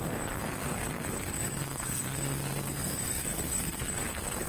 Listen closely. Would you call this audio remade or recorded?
remade